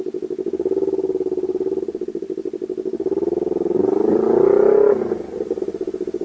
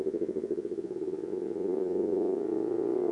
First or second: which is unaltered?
first